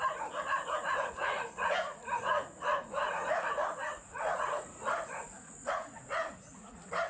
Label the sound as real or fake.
fake